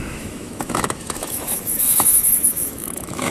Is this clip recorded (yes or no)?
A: no